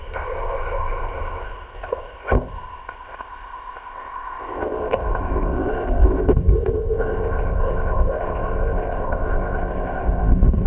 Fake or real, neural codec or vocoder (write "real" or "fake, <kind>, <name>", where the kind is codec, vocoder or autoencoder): fake, codec, ZipCodec